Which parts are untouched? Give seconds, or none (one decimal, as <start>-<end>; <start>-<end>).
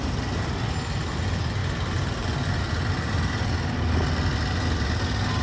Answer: 0.0-5.4